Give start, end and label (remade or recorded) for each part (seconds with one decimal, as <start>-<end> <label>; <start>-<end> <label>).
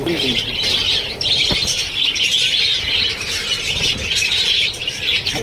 0.0-5.4 recorded